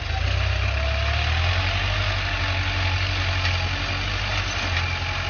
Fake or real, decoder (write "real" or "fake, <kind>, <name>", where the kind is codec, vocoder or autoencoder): real